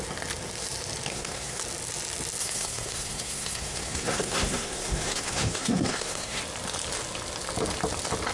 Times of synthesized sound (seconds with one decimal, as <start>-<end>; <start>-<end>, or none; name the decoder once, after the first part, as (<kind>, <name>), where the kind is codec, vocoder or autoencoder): 1.1-1.6 (codec, SNAC); 2.4-6.4